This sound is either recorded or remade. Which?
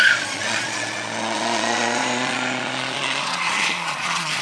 remade